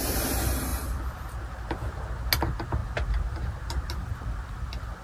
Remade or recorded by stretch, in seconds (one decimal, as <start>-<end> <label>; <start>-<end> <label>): 0.0-5.0 recorded